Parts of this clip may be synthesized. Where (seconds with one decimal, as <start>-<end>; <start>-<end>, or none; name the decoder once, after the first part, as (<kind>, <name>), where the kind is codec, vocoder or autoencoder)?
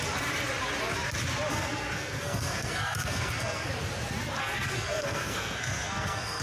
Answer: 1.5-3.7 (codec, SNAC); 4.4-6.4